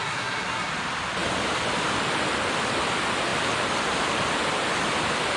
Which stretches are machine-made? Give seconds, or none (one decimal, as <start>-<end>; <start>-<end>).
0.0-0.7